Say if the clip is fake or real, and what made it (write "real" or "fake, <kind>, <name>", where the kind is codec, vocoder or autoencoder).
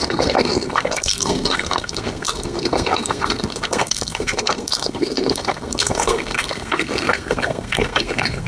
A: fake, codec, SNAC